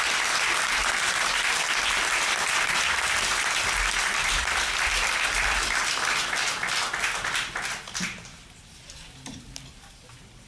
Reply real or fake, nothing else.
fake